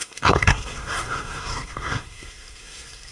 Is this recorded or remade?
remade